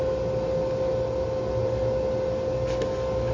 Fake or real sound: real